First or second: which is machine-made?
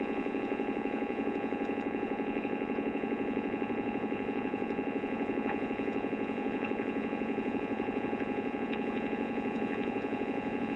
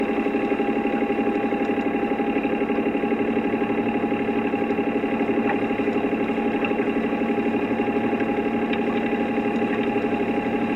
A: first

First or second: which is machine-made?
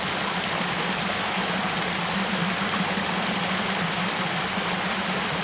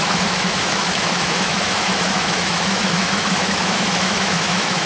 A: second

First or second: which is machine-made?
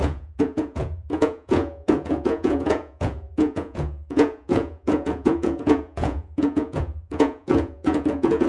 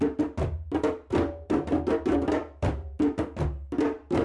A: first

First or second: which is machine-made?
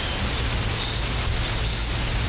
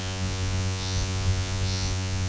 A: second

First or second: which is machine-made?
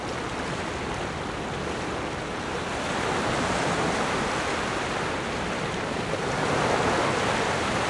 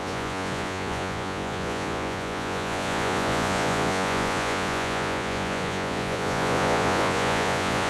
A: second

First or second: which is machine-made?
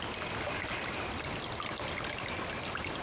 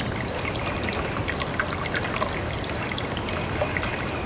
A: second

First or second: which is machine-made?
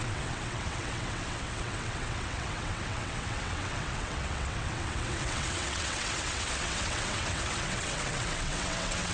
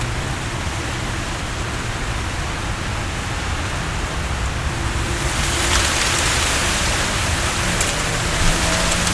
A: first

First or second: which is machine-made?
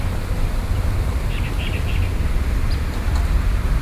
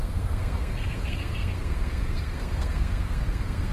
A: second